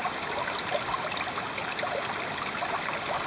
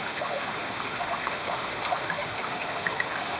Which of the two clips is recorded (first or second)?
first